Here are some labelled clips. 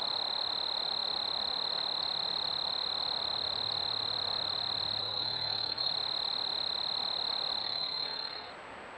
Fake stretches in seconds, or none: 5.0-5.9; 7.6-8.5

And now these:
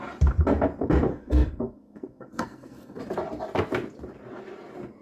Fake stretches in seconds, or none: 1.1-3.0